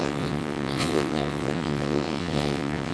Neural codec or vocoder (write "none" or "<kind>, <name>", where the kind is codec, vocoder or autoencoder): vocoder, WaveNeXt